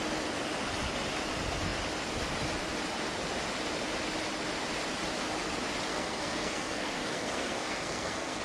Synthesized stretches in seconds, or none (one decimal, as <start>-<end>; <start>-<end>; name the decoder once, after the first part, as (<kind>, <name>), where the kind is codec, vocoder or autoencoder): 5.9-8.4 (codec, SNAC)